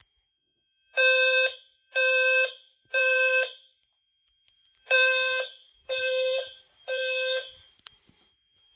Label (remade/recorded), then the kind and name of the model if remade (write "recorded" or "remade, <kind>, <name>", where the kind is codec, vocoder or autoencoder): remade, vocoder, BigVGAN v2